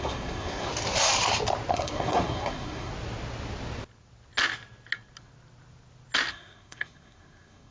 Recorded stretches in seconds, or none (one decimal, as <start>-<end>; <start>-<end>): 0.7-1.7; 2.9-6.3